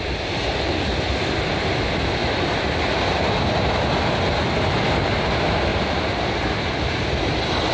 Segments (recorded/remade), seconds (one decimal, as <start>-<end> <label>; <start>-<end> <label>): 0.0-2.2 recorded; 2.2-3.8 remade; 3.8-5.7 recorded; 5.7-6.3 remade; 6.3-7.7 recorded